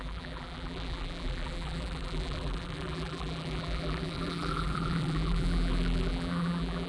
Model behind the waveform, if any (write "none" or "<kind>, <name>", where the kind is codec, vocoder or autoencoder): vocoder, BigVGAN v2